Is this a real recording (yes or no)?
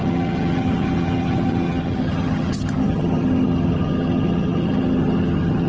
no